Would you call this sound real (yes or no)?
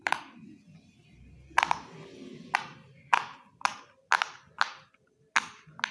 yes